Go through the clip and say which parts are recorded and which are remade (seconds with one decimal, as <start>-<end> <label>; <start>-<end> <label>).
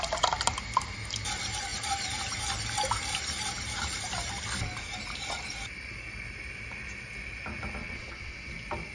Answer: 0.0-7.8 recorded; 7.8-8.5 remade; 8.5-8.9 recorded